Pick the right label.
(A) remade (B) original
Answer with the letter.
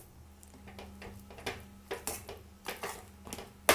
B